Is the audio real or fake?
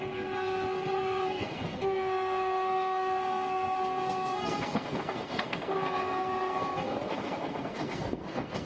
fake